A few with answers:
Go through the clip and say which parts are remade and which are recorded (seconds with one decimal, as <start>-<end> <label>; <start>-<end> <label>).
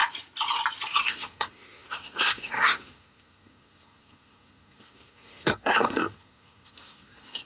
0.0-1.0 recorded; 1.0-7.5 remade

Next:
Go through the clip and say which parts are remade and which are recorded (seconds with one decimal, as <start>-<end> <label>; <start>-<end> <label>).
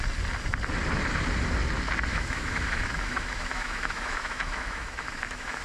0.0-2.1 recorded; 2.1-5.6 remade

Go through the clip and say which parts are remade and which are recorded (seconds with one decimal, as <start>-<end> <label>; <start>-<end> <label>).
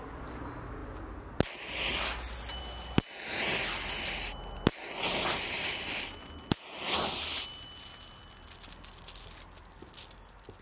0.0-10.6 recorded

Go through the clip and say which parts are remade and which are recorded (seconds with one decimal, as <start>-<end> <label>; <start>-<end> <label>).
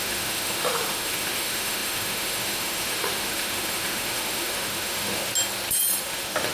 0.0-5.3 remade; 5.3-6.0 recorded; 6.0-6.5 remade